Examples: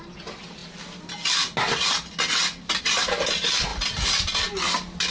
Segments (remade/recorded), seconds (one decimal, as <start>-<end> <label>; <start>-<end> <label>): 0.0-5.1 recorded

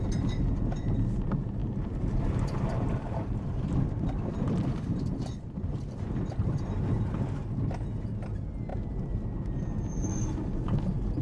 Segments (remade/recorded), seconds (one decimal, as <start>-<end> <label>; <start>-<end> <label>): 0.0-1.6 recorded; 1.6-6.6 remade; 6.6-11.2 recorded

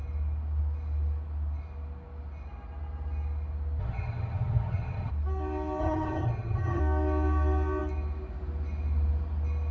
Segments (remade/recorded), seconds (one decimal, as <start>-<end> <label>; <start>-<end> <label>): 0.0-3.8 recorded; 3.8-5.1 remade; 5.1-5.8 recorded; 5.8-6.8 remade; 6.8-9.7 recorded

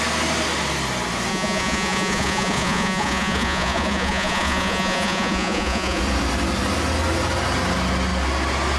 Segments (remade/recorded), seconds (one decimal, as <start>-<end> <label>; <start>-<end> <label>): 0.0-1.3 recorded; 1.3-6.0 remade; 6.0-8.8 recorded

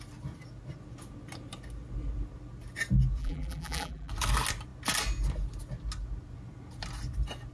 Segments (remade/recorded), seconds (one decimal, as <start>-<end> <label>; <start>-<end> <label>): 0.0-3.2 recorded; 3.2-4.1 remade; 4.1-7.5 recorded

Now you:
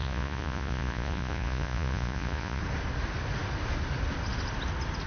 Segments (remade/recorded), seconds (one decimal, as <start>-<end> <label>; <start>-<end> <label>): 0.0-2.6 remade; 2.6-5.1 recorded